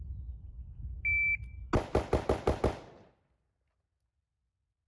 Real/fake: real